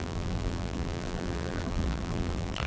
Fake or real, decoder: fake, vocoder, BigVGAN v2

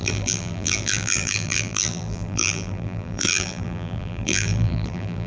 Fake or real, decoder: fake, vocoder, BigVGAN v2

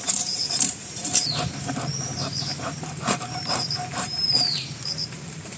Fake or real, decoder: fake, vocoder, BigVGAN v2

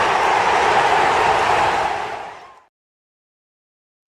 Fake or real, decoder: fake, vocoder, BigVGAN v2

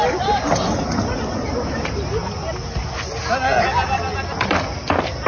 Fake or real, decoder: real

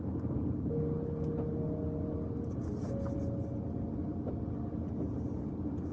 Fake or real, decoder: real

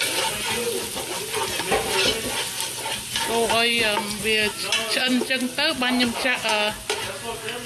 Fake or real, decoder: real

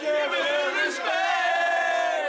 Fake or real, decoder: fake, vocoder, BigVGAN v2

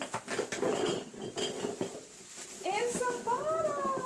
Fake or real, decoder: real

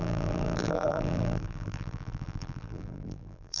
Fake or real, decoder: fake, vocoder, BigVGAN v2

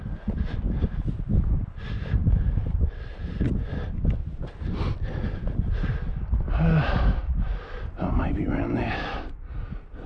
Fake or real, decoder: real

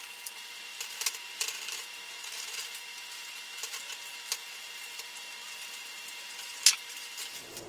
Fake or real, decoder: fake, vocoder, BigVGAN v2